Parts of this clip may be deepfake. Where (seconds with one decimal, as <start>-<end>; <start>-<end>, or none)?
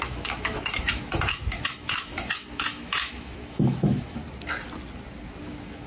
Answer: 0.0-4.2; 5.4-5.9